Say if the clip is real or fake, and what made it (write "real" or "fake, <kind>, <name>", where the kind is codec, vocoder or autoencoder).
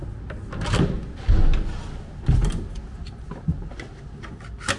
real